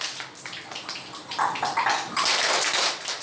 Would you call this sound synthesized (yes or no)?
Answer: no